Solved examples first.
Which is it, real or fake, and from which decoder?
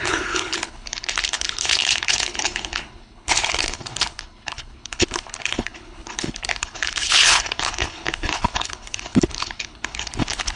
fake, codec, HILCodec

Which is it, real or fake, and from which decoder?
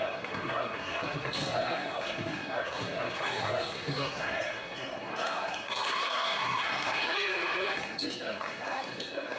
fake, codec, SNAC